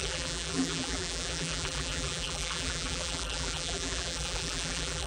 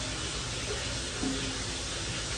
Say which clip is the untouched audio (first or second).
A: second